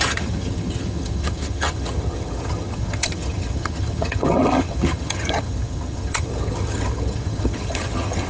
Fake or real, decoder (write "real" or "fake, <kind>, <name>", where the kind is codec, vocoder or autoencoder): fake, vocoder, HiFi-GAN